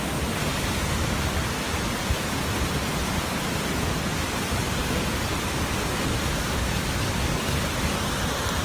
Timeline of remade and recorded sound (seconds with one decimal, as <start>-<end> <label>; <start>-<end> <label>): 0.0-4.8 recorded; 4.8-7.6 remade; 7.6-8.6 recorded

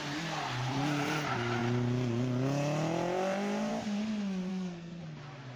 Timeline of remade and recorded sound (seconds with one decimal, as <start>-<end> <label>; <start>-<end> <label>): 0.0-4.5 recorded; 4.5-5.0 remade; 5.0-5.6 recorded

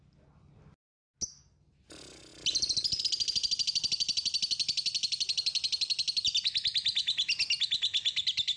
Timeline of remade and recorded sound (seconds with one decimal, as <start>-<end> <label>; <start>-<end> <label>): 0.0-8.6 recorded

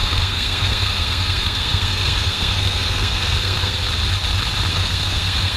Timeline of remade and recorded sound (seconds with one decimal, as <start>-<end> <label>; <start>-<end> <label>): 0.0-3.8 remade; 3.8-4.7 recorded; 4.7-5.6 remade